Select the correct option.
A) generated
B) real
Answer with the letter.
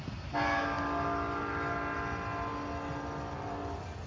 B